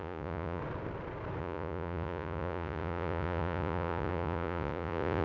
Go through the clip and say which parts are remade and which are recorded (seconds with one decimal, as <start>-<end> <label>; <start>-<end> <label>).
0.0-0.6 remade; 0.6-1.4 recorded; 1.4-5.2 remade